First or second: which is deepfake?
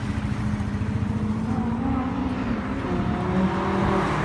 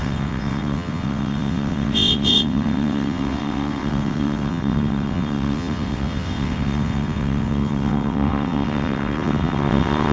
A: second